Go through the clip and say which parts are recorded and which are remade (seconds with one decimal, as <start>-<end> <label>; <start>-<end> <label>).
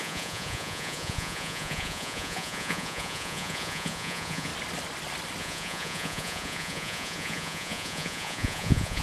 0.0-4.5 remade; 4.5-5.4 recorded; 5.4-9.0 remade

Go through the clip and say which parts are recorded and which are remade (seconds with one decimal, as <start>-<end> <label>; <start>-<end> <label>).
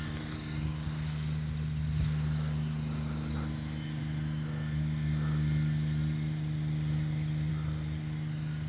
0.0-8.7 recorded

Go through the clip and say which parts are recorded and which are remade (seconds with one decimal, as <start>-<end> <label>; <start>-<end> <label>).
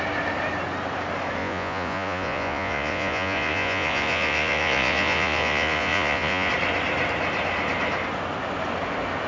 0.0-1.4 recorded; 1.4-6.5 remade; 6.5-9.3 recorded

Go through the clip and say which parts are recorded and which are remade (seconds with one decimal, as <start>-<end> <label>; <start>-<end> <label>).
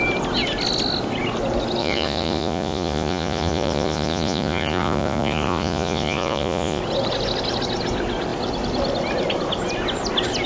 0.0-1.8 recorded; 1.8-6.8 remade; 6.8-10.5 recorded